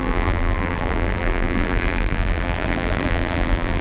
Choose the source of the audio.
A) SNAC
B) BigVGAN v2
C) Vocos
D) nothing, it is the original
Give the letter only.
B